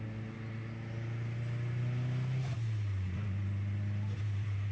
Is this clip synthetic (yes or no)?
no